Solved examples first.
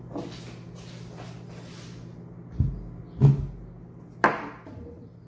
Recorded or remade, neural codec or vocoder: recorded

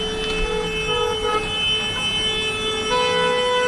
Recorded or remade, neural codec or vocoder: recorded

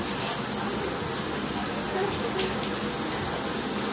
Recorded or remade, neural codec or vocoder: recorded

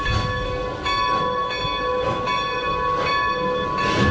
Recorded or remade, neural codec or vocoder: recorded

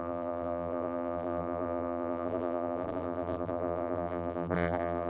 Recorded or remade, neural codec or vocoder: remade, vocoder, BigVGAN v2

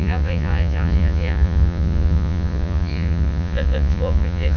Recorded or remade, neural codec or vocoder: remade, vocoder, Vocos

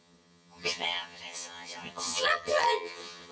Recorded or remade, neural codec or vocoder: remade, vocoder, HiFi-GAN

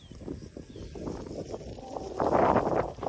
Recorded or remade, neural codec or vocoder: recorded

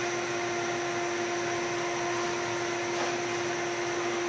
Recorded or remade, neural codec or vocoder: recorded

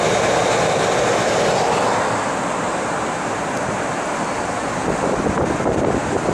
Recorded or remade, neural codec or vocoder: recorded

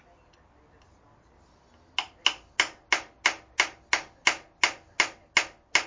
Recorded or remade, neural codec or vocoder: recorded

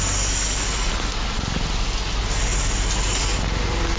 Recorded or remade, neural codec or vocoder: recorded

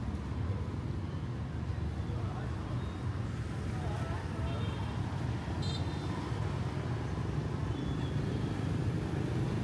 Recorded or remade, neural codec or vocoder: recorded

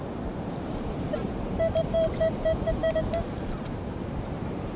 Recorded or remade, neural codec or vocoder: remade, vocoder, BigVGAN v2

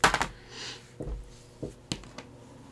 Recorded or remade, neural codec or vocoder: recorded